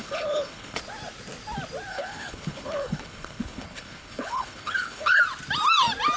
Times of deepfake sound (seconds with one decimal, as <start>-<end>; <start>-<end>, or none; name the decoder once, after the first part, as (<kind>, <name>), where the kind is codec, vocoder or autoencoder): 0.0-0.8 (codec, HILCodec); 1.9-5.2